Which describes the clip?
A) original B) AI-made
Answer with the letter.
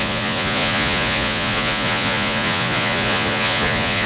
B